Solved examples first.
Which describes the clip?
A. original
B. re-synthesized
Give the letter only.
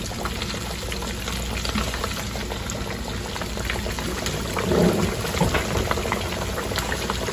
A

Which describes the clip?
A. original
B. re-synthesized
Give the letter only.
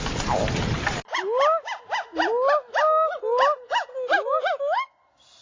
A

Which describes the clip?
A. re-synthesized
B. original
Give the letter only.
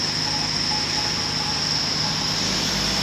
B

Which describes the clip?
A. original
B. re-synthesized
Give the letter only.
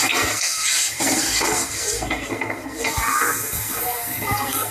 B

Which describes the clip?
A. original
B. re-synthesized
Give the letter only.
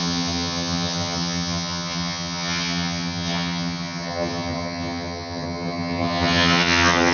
B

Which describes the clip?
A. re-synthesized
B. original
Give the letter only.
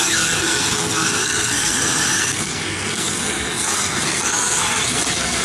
A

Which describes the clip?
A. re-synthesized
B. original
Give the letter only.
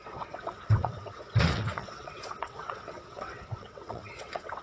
A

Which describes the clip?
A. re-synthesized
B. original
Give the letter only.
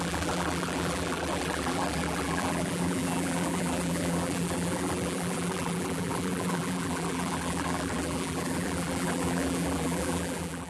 A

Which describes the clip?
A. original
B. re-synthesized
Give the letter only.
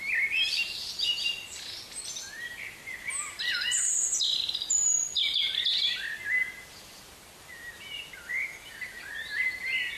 B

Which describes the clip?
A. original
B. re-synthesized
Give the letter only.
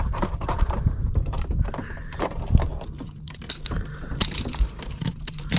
B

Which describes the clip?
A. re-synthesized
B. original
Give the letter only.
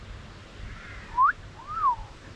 B